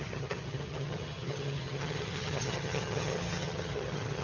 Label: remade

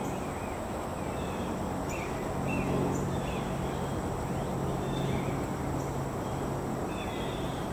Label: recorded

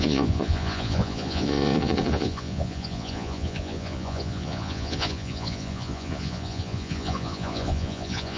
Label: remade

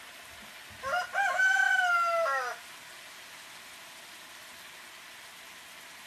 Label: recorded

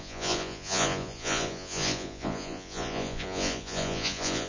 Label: remade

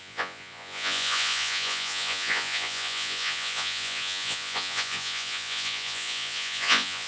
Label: remade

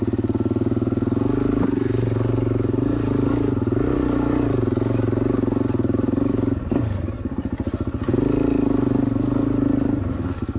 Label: recorded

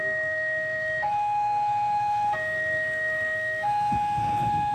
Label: remade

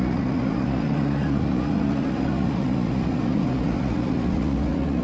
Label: remade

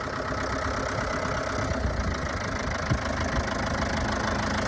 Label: recorded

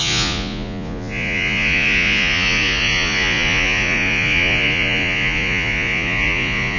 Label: remade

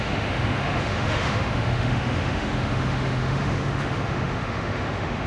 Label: remade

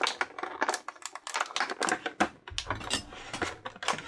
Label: recorded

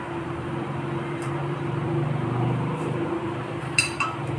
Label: remade